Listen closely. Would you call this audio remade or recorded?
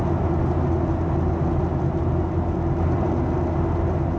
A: recorded